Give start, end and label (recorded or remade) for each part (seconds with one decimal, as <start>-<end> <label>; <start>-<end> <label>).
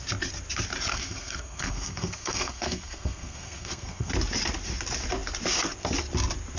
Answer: 0.0-0.9 recorded; 0.9-4.1 remade; 4.1-6.6 recorded